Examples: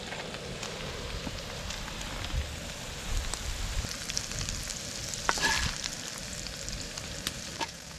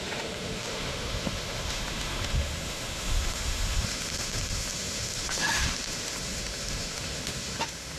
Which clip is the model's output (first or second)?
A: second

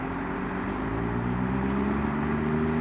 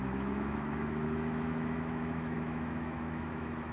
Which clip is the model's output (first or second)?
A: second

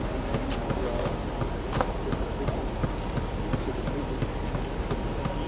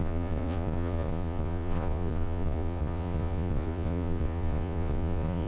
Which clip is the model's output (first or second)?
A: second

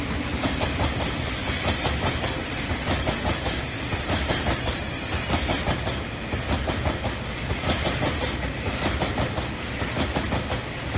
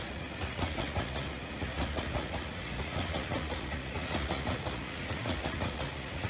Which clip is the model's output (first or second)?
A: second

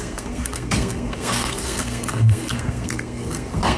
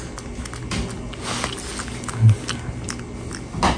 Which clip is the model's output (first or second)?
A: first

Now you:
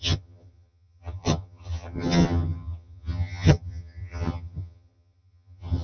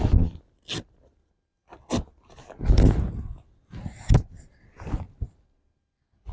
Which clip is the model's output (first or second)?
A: first